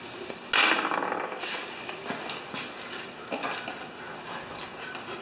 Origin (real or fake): real